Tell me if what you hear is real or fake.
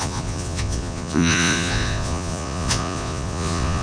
fake